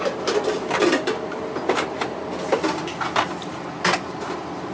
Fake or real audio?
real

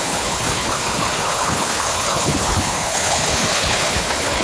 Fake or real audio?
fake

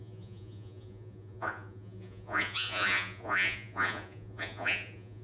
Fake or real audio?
fake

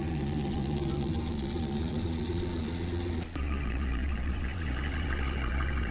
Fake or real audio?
fake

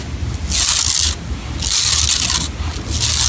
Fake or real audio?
real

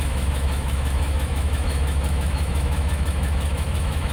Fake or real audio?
fake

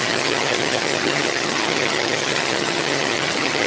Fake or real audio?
fake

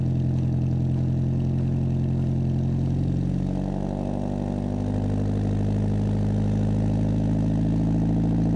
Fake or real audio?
real